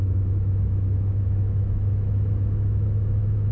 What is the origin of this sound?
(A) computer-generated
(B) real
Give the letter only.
A